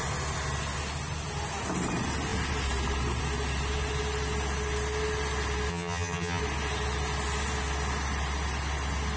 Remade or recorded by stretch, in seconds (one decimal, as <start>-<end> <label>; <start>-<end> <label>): 0.0-5.7 recorded; 5.7-6.4 remade; 6.4-9.2 recorded